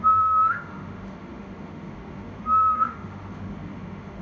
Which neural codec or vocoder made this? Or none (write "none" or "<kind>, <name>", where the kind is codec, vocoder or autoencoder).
autoencoder, DAC-VAE